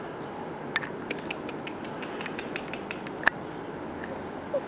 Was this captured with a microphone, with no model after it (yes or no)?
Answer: yes